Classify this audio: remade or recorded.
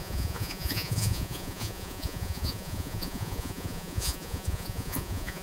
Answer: remade